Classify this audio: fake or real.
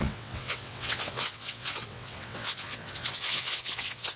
fake